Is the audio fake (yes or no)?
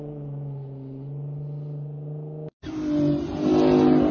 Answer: no